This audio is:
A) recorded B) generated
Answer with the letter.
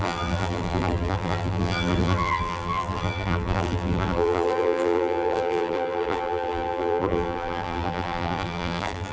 B